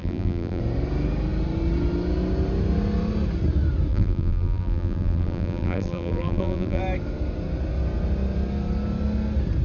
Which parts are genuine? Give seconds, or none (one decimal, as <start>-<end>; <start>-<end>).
0.6-3.9; 6.8-9.6